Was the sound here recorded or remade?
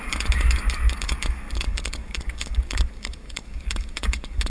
remade